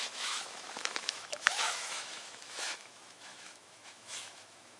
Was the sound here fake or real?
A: fake